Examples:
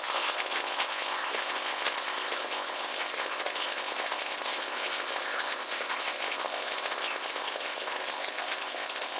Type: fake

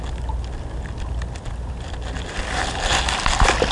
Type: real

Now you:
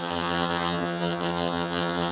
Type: fake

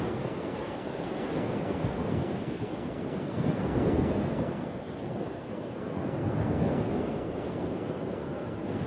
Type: fake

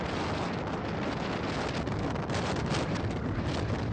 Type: real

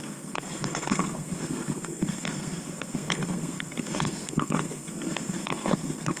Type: fake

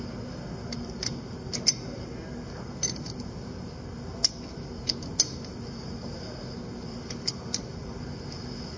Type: real